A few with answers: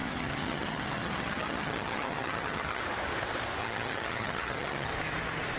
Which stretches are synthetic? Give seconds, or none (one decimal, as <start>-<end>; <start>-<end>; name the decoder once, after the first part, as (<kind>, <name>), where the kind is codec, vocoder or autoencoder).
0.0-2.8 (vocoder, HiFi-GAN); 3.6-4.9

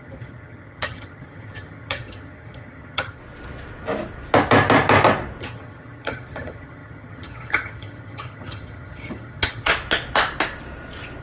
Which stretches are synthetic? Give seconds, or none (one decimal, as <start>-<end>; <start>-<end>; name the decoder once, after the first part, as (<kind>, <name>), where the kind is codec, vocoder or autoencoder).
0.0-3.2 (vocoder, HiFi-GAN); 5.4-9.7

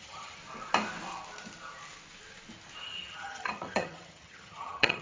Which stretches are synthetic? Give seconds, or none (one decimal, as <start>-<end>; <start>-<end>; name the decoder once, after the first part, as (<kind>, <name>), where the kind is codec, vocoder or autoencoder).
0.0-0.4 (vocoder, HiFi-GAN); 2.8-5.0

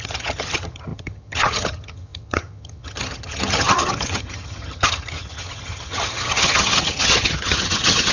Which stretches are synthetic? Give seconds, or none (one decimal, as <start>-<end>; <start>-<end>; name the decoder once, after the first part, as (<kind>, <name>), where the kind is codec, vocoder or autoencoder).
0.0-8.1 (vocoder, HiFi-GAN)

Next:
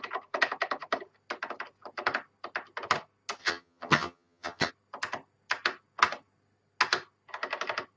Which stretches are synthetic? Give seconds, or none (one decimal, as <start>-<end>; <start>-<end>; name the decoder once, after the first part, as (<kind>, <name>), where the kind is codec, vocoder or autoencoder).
3.4-4.7 (vocoder, HiFi-GAN)

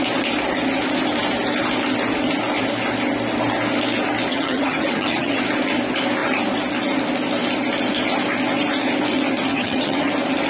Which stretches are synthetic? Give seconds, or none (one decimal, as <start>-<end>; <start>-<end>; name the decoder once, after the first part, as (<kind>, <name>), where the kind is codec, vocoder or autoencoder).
4.3-5.4 (vocoder, HiFi-GAN); 9.5-10.1

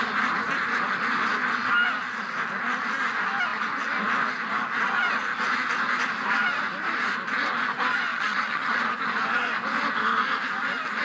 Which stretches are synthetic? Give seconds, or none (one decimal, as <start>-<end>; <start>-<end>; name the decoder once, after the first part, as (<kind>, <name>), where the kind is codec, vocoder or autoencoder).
8.1-8.8 (vocoder, HiFi-GAN)

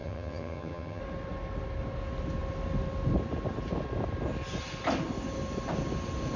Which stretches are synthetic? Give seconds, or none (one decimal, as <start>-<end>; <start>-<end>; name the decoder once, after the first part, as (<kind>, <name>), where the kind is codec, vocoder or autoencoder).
0.0-1.0 (vocoder, HiFi-GAN)